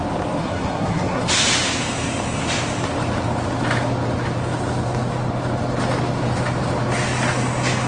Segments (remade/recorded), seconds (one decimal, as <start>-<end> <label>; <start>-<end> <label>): 0.0-0.4 recorded; 0.4-1.2 remade; 1.2-7.9 recorded